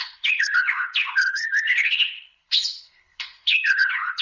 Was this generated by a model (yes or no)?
yes